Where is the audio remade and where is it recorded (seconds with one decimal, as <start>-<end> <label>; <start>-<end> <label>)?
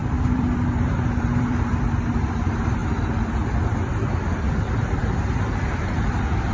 0.0-2.8 remade; 2.8-4.5 recorded; 4.5-6.5 remade